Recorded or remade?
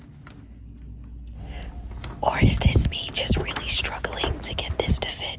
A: recorded